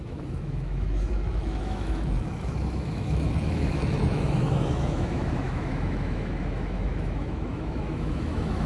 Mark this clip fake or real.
fake